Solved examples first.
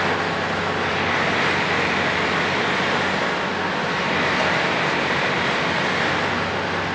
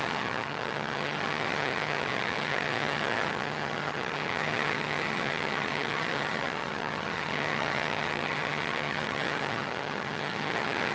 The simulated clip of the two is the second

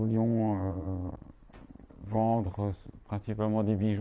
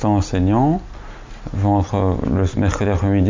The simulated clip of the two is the first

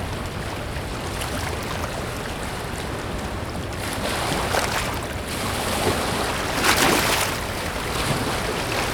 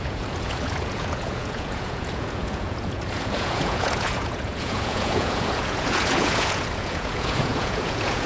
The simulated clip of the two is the second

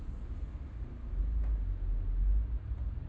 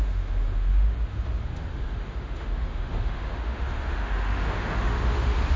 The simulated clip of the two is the second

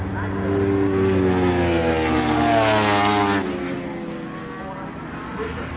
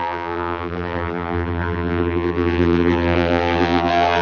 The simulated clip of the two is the second